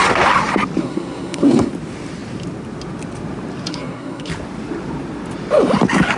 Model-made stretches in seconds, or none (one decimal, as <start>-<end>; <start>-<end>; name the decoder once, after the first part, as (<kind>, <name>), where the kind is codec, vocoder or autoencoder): 0.8-1.7 (codec, SNAC); 3.7-4.3